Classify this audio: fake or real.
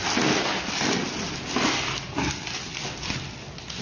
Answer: real